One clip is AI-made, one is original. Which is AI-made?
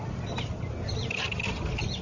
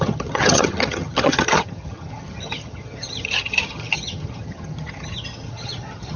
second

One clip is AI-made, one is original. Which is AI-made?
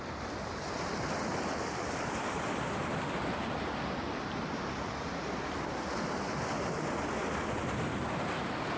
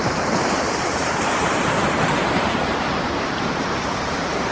second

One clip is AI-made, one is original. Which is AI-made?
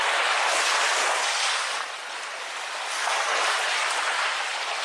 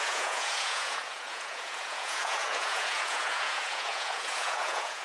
second